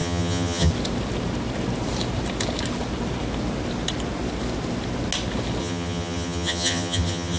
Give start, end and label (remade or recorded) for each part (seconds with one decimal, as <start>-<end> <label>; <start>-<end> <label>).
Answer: 0.0-0.7 remade; 0.7-5.6 recorded; 5.6-7.4 remade